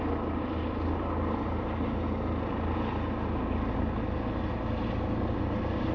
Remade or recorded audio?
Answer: recorded